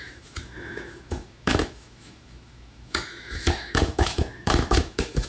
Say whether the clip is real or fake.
fake